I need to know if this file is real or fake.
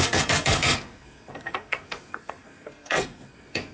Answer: fake